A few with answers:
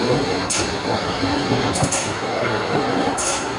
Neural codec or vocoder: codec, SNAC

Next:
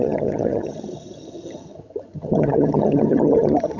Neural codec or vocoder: vocoder, HiFi-GAN